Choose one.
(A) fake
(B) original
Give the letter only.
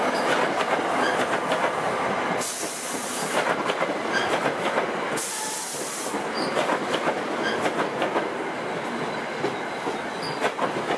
B